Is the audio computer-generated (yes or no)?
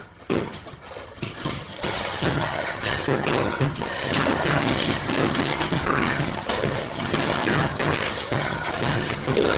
yes